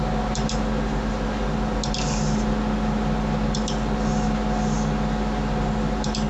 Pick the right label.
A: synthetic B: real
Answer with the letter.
B